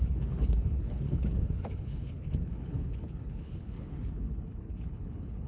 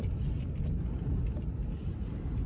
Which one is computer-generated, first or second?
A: first